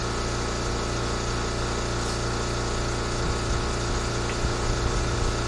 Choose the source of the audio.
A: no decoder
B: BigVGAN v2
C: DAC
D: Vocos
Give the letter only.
A